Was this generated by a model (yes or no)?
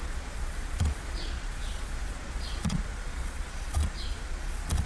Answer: yes